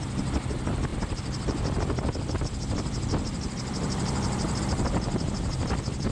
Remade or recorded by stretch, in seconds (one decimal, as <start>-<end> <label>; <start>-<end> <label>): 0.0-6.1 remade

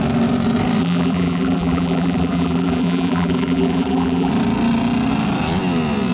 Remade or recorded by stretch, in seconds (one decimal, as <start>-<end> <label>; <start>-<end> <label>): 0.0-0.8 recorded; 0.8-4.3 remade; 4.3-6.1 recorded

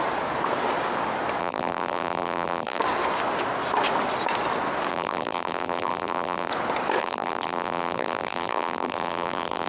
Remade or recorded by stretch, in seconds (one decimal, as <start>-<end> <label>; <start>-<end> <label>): 0.0-1.4 recorded; 1.4-2.8 remade; 2.8-4.9 recorded; 4.9-6.5 remade; 6.5-7.0 recorded; 7.0-9.7 remade

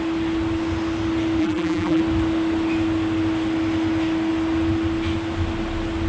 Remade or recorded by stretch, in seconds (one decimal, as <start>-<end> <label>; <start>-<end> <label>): 0.0-1.4 recorded; 1.4-2.0 remade; 2.0-6.1 recorded

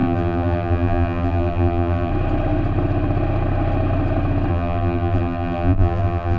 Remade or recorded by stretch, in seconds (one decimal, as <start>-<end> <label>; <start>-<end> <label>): 0.0-2.1 remade; 2.1-4.5 recorded; 4.5-6.4 remade

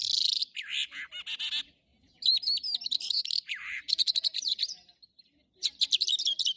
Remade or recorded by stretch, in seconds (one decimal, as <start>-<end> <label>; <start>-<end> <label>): 0.0-1.9 recorded; 1.9-5.9 remade; 5.9-6.6 recorded

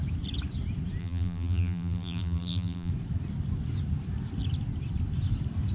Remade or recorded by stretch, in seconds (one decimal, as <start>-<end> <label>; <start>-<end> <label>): 0.0-1.0 recorded; 1.0-2.9 remade; 2.9-5.7 recorded